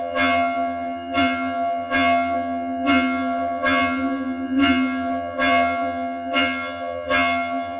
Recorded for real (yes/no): no